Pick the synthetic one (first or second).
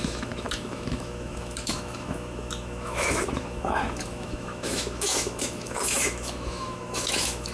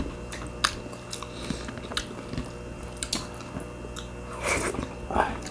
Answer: first